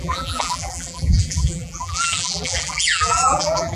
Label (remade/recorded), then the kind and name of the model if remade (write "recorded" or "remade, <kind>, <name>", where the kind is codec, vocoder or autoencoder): remade, vocoder, BigVGAN v2